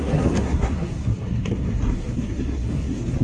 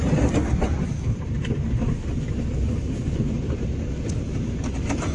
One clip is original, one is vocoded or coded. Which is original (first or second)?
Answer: second